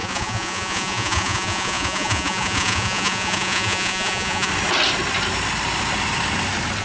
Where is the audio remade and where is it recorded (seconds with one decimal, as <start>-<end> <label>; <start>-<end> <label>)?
0.0-4.5 remade; 4.5-6.8 recorded